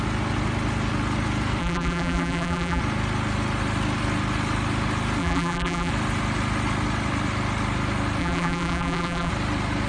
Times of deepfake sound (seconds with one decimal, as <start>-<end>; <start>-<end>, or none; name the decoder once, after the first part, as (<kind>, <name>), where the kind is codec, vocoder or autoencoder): 1.6-2.8 (vocoder, BigVGAN v2); 5.2-5.9; 8.2-9.3